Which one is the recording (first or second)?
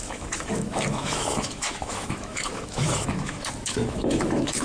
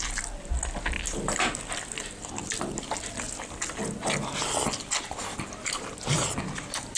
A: second